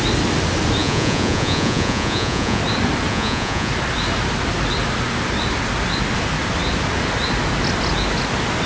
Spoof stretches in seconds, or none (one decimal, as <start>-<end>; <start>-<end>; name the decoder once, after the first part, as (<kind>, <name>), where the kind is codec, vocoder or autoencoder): 0.8-2.6 (vocoder, Vocos); 3.1-3.7